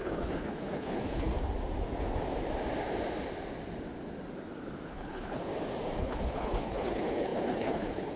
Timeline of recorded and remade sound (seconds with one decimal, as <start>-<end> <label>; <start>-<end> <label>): 0.0-1.3 remade; 1.3-4.9 recorded; 4.9-5.5 remade; 5.5-6.0 recorded; 6.0-8.2 remade